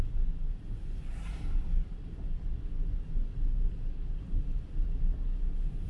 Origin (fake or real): real